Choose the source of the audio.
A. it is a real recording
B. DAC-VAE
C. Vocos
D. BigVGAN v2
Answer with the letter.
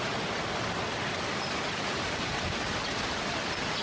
A